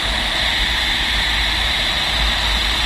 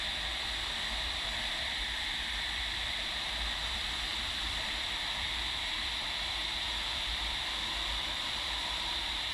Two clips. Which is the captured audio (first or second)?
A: first